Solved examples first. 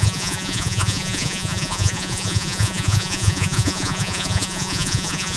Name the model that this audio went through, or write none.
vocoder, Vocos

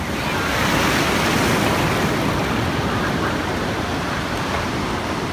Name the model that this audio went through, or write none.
none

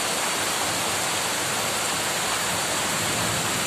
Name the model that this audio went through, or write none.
none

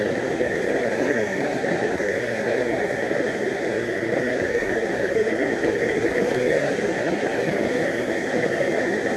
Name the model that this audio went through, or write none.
codec, SNAC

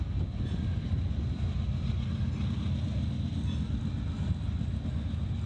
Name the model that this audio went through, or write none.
none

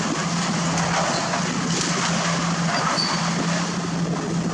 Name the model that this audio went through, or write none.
none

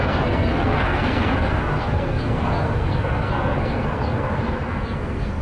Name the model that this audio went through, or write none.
codec, SNAC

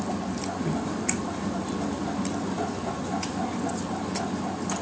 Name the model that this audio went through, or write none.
none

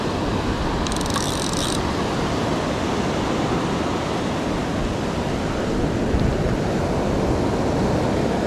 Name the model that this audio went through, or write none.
none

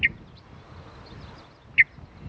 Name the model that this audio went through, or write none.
none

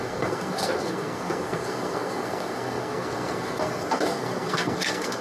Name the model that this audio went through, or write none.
codec, SNAC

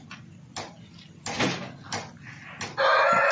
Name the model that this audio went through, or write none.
none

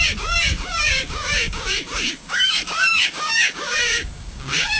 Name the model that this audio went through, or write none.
codec, DAC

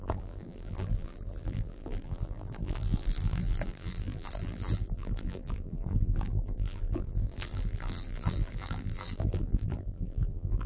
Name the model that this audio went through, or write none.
vocoder, BigVGAN v2